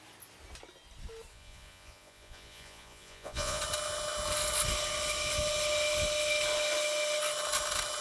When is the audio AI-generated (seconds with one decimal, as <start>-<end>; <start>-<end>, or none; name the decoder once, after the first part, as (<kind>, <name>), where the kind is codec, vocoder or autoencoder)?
1.3-3.6 (vocoder, Vocos)